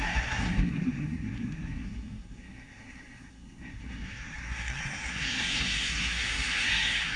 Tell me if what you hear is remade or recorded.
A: remade